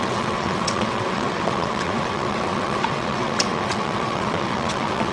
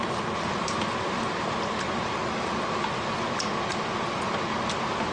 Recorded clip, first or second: second